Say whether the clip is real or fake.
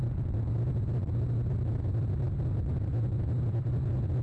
real